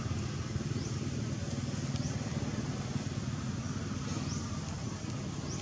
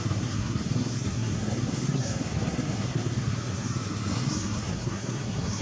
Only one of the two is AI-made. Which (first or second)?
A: second